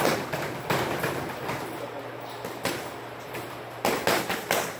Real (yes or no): yes